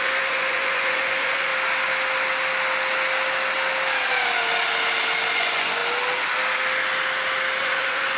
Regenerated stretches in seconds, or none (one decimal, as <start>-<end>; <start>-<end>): 0.0-1.5; 5.3-5.8; 7.6-8.2